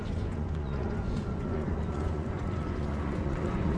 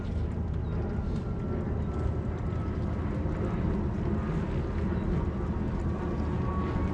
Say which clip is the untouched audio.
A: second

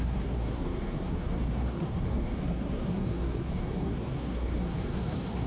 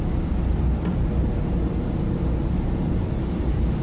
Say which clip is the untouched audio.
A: second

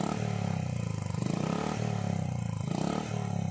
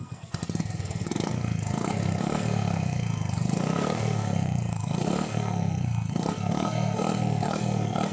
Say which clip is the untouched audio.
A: first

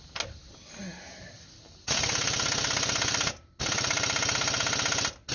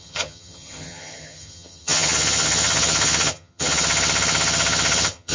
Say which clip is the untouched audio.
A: first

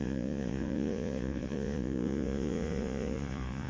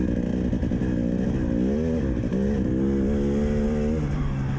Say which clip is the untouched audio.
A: second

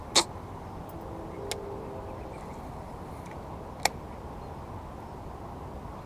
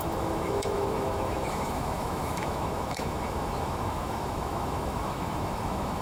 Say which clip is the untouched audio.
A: first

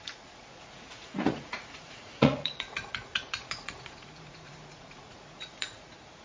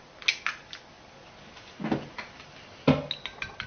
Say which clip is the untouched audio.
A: second